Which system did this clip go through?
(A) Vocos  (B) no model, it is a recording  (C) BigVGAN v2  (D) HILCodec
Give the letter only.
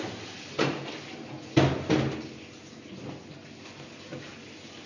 B